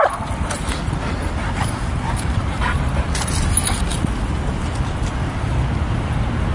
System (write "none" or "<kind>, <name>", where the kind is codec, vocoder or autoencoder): none